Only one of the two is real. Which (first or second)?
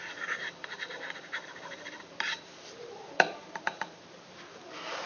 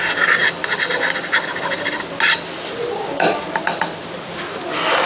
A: second